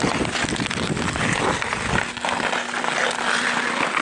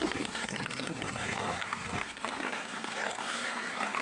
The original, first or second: first